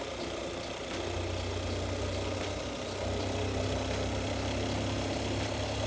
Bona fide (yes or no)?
yes